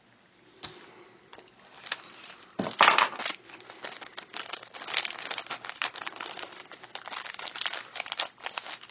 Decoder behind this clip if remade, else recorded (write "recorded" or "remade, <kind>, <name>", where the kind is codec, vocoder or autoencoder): recorded